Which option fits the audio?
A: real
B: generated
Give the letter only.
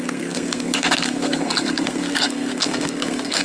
B